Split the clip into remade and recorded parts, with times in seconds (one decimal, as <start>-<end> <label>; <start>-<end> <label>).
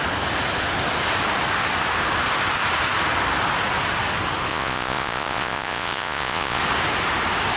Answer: 0.0-4.5 recorded; 4.5-6.6 remade; 6.6-7.6 recorded